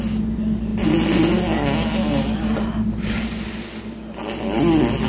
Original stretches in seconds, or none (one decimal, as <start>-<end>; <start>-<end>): 0.0-5.1